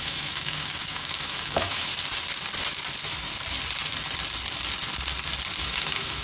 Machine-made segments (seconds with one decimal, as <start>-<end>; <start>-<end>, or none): 0.0-1.9; 5.6-6.2